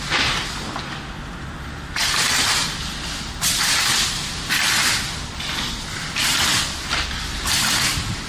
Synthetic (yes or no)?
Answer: no